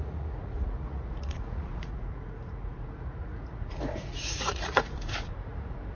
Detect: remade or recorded remade